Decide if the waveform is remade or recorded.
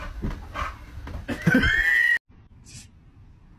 recorded